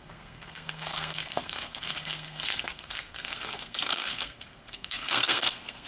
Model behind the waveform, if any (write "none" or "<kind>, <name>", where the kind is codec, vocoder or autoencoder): codec, SNAC